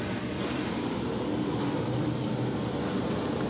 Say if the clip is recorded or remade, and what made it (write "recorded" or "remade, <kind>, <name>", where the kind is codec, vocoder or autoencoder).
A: recorded